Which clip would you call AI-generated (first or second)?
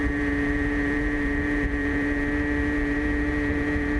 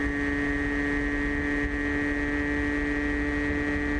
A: first